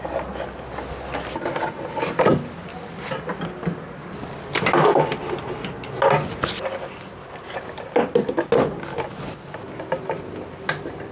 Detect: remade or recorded recorded